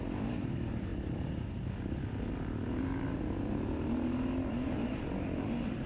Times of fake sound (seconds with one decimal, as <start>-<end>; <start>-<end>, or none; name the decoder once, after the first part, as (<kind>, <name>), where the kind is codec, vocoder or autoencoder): none